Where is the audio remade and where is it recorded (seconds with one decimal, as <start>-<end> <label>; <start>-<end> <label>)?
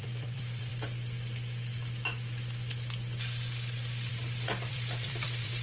0.0-0.7 remade; 0.7-4.1 recorded; 4.1-5.6 remade